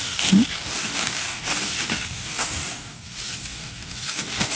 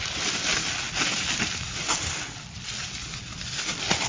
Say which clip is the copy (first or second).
first